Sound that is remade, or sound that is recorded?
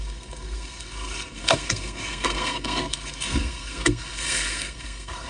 remade